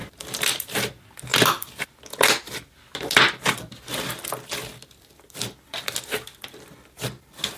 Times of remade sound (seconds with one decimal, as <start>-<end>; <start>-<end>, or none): none